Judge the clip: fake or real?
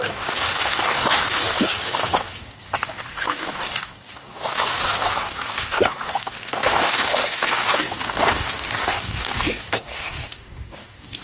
fake